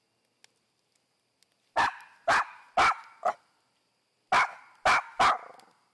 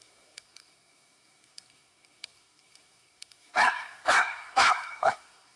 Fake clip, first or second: second